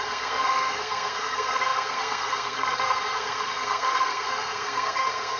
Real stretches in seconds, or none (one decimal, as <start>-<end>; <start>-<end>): none